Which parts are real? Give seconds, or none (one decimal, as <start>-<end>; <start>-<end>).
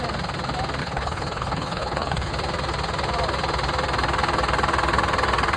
0.0-0.8; 2.3-5.6